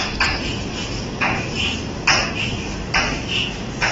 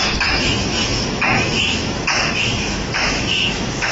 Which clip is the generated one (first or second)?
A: second